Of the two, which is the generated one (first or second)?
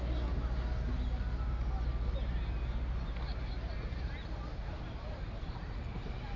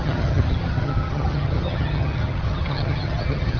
second